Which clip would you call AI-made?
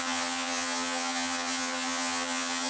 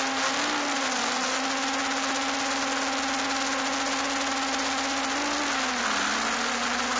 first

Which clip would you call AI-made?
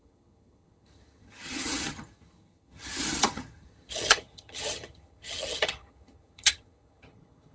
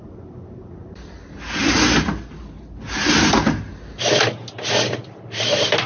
first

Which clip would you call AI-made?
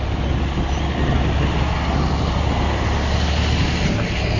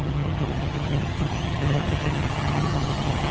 second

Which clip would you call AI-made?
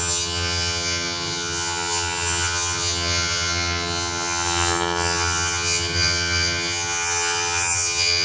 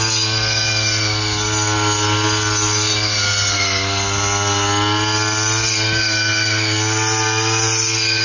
first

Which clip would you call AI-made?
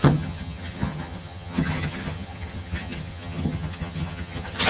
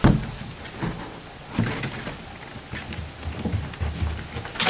first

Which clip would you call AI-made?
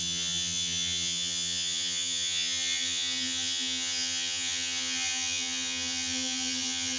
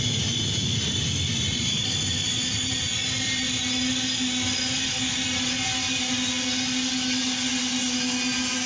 first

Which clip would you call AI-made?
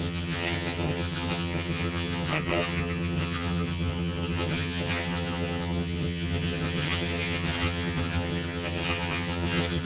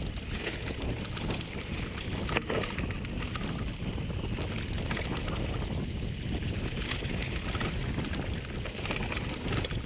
first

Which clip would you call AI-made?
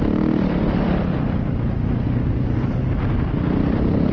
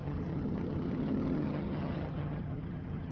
second